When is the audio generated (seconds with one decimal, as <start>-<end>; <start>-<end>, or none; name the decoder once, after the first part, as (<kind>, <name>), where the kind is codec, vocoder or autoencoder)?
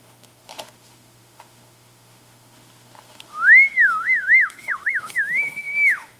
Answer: 0.0-6.2 (autoencoder, DAC-VAE)